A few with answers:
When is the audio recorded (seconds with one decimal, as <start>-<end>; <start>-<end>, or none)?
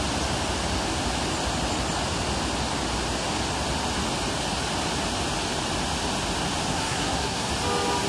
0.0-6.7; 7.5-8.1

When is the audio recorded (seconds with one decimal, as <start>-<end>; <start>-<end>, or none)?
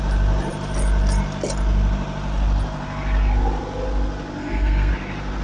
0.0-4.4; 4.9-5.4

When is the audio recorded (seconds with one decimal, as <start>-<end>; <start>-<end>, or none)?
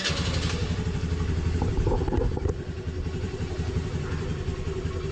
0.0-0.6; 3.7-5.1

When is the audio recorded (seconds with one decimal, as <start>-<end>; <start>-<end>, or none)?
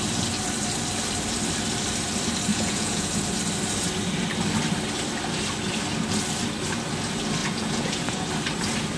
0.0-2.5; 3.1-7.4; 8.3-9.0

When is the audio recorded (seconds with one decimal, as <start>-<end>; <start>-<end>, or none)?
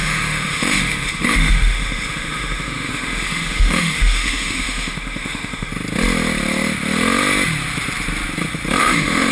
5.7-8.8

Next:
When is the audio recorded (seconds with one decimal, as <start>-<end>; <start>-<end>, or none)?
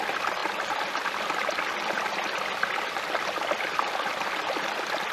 0.0-5.1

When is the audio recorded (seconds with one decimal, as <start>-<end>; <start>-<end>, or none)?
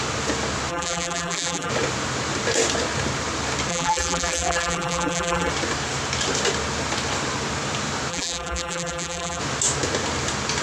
0.0-0.7; 1.7-3.7; 5.5-8.1; 9.4-10.6